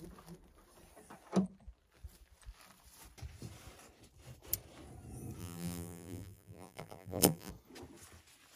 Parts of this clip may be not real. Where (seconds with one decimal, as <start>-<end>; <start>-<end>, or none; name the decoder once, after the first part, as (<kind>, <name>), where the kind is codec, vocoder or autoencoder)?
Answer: 5.4-7.5 (vocoder, BigVGAN v2)